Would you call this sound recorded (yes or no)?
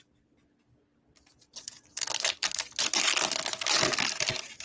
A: yes